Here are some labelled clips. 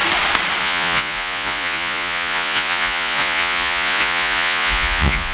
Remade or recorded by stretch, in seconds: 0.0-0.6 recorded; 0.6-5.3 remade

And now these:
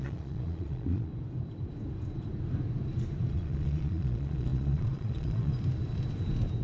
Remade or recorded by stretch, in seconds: 0.0-1.1 remade; 1.1-3.3 recorded; 3.3-5.5 remade; 5.5-6.6 recorded

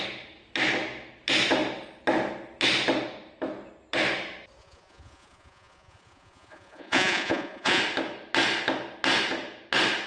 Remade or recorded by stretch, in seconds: 0.0-4.6 recorded; 4.6-7.8 remade; 7.8-10.1 recorded

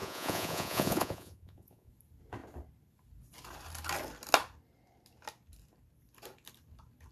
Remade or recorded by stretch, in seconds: 0.0-1.9 remade; 1.9-7.1 recorded

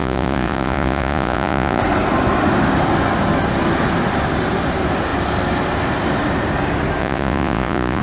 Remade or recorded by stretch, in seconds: 0.0-1.8 remade; 1.8-7.0 recorded; 7.0-8.0 remade

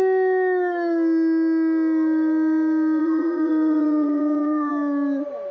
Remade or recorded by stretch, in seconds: 0.0-3.0 recorded; 3.0-4.7 remade; 4.7-5.5 recorded